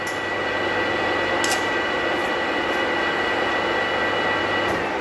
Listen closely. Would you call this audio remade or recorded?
recorded